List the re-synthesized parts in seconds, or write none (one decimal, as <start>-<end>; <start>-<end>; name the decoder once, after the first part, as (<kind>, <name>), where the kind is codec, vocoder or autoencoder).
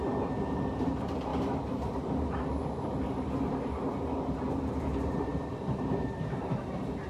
0.5-1.3 (vocoder, BigVGAN v2); 4.7-7.1